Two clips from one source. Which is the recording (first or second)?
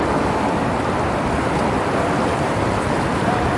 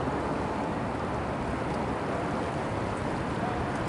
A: second